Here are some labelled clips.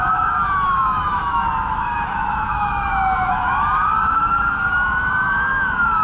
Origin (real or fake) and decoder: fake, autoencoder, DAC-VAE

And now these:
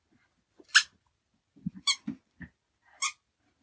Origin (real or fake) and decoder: real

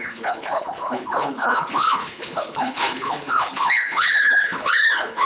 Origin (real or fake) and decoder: fake, codec, HILCodec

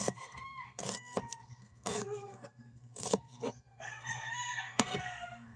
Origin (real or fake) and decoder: fake, codec, SNAC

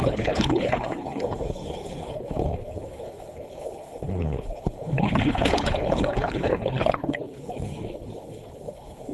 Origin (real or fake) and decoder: fake, codec, HILCodec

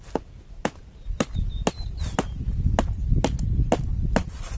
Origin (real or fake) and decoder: real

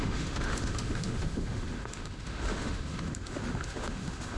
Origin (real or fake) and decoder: fake, autoencoder, DAC-VAE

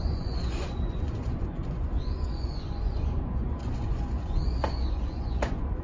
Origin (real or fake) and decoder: fake, vocoder, Vocos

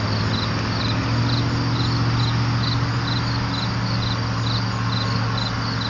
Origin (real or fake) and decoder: real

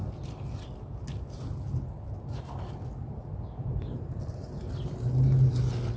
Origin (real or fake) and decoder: real